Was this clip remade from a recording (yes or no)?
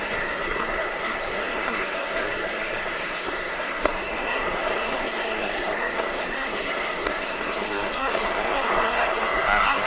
yes